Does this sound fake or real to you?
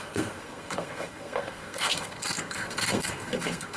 fake